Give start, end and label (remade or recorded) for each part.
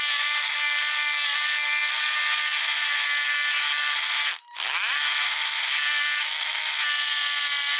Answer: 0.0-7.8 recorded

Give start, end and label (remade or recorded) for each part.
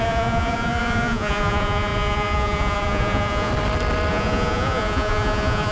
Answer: 0.0-3.5 remade; 3.5-4.1 recorded; 4.1-5.7 remade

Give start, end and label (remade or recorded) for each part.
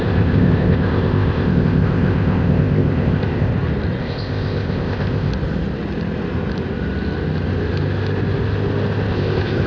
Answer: 0.0-3.5 remade; 3.5-4.0 recorded; 4.0-5.3 remade; 5.3-9.1 recorded; 9.1-9.7 remade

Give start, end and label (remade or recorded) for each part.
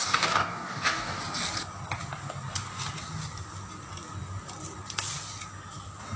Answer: 0.0-1.2 remade; 1.2-6.2 recorded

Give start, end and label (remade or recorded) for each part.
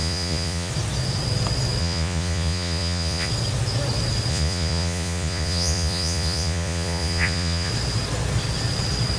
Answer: 0.0-0.7 remade; 0.7-1.8 recorded; 1.8-3.3 remade; 3.3-4.3 recorded; 4.3-7.7 remade; 7.7-9.2 recorded